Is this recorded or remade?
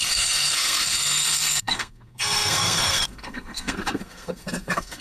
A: remade